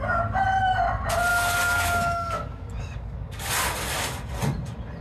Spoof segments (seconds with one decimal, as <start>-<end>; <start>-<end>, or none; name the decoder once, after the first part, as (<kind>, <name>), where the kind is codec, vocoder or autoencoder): 1.3-3.5 (codec, DAC)